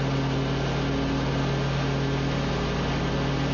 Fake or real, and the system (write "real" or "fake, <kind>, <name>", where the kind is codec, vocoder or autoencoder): real